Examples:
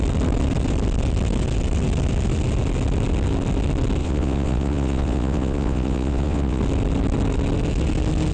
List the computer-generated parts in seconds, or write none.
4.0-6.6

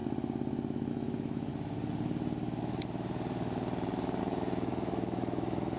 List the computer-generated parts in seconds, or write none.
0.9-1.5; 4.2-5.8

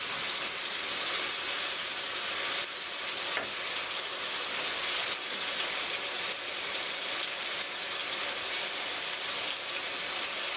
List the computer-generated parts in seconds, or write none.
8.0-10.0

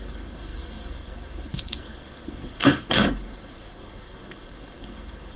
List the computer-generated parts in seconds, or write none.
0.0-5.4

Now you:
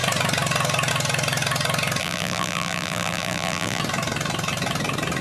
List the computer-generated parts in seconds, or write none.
2.0-3.8

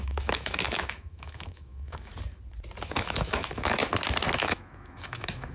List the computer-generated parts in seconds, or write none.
0.0-2.1; 2.9-3.8; 4.4-5.5

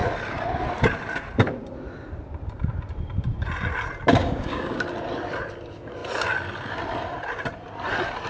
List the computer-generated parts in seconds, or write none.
4.2-4.8

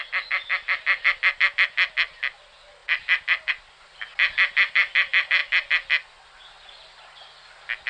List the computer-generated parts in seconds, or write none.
none